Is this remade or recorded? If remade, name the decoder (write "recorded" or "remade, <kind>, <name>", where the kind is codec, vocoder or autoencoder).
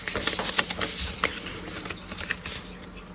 recorded